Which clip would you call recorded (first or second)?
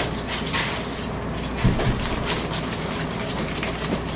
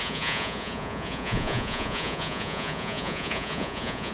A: first